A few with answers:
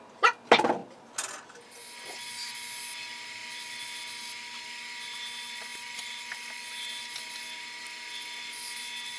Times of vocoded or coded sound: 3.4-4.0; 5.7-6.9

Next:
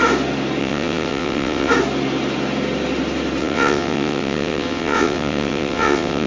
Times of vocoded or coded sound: 0.6-1.7; 3.4-6.3

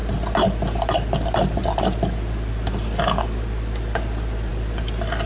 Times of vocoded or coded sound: none

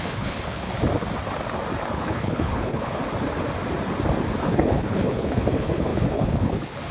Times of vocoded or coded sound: 0.0-0.7; 1.9-3.0; 4.4-6.9

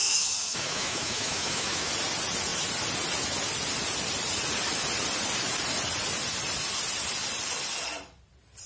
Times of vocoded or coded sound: 0.0-1.9

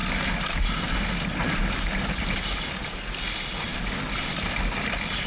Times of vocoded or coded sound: none

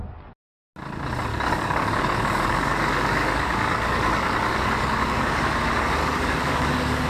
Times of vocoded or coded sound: 1.3-5.6; 6.0-7.1